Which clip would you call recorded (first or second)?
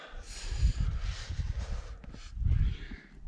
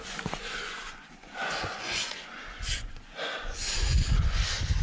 first